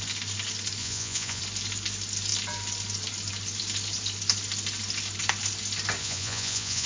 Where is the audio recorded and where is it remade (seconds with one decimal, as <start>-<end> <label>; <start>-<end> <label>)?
0.0-0.8 recorded; 0.8-1.4 remade; 1.4-6.0 recorded; 6.0-6.9 remade